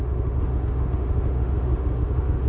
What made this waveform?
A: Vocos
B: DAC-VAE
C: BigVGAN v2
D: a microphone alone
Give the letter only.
B